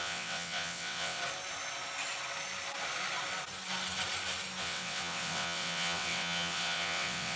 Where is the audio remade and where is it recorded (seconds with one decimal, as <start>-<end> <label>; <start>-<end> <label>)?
0.0-1.2 remade; 1.2-4.6 recorded; 4.6-7.4 remade